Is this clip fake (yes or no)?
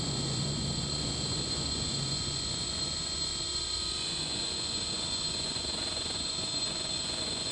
yes